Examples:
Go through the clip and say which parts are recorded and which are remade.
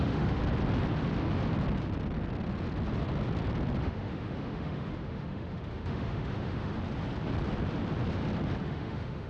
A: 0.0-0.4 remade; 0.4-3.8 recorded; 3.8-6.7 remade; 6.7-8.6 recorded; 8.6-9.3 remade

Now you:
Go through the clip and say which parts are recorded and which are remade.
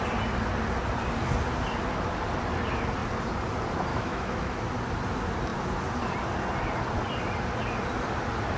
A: 0.0-3.9 recorded; 3.9-4.6 remade; 4.6-8.6 recorded